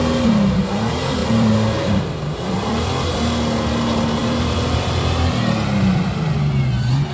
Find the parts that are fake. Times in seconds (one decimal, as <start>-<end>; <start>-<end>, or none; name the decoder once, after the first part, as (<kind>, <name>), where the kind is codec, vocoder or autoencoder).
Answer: 1.2-2.9 (vocoder, BigVGAN v2); 4.2-4.8